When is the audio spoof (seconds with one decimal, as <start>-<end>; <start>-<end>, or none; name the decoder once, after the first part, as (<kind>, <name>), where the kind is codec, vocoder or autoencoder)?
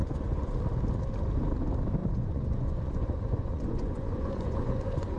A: 0.0-0.6 (vocoder, Vocos); 2.0-5.2